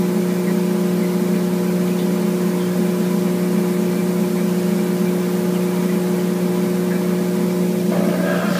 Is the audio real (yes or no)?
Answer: yes